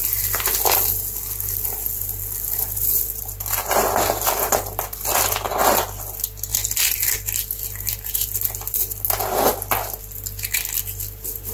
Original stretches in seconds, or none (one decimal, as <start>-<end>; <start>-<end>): 0.0-11.5